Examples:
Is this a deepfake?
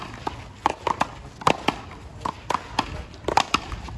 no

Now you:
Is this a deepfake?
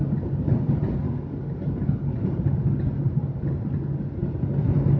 no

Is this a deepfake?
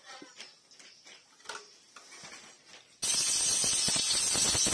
no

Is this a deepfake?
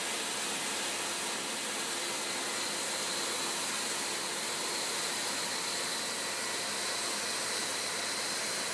no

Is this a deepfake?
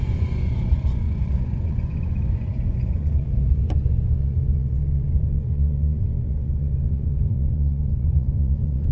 yes